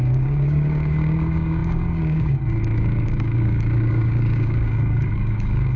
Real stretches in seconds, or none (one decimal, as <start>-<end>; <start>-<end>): none